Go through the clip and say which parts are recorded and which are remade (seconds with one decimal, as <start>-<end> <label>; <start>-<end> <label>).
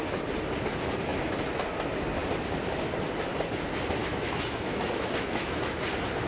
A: 0.0-4.0 recorded; 4.0-5.8 remade; 5.8-6.3 recorded